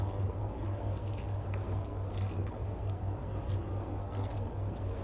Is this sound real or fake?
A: fake